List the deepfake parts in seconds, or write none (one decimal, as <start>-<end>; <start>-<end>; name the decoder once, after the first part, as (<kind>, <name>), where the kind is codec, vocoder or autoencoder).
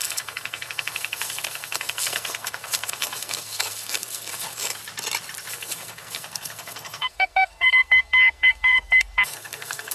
0.0-4.8 (codec, SNAC); 5.5-9.9